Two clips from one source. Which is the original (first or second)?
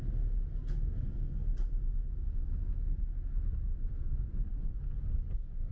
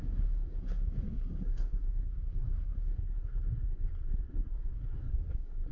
first